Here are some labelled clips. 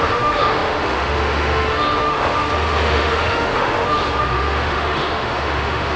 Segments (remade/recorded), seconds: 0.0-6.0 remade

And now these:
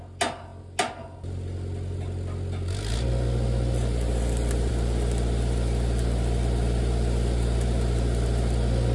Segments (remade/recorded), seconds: 0.0-8.9 recorded

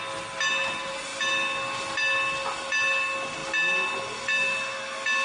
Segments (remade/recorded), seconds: 0.0-5.2 recorded

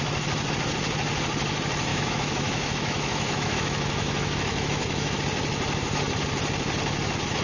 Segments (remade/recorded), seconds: 0.0-1.9 recorded; 1.9-5.2 remade; 5.2-7.4 recorded

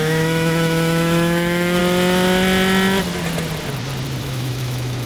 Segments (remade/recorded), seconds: 0.0-1.8 remade; 1.8-4.2 recorded; 4.2-5.1 remade